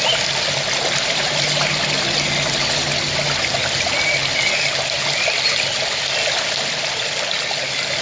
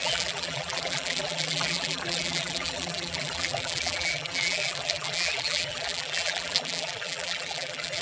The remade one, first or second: second